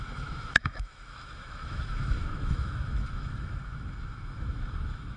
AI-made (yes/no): yes